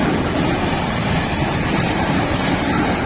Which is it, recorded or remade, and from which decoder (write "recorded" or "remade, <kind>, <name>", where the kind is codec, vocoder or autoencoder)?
recorded